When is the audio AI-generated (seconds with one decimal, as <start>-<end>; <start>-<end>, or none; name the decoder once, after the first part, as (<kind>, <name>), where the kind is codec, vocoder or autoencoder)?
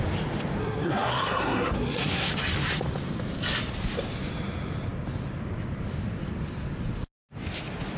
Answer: 0.6-2.3 (codec, SNAC)